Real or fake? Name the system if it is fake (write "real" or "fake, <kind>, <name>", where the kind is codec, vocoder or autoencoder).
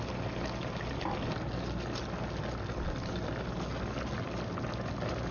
real